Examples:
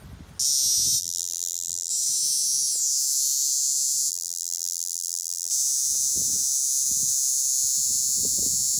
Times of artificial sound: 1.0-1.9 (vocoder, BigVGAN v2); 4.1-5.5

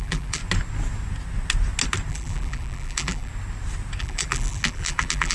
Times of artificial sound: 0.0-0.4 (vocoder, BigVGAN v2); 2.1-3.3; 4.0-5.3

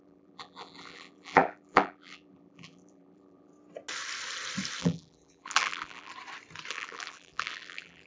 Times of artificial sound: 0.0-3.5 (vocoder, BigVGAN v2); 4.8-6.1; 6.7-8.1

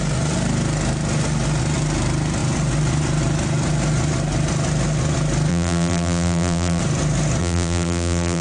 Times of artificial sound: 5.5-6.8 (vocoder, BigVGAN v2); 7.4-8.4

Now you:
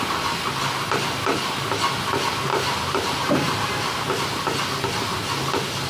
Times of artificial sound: 2.5-3.8 (vocoder, BigVGAN v2)